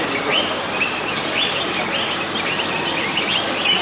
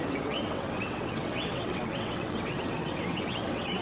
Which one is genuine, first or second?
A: first